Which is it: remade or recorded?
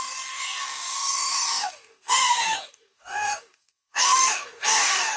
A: remade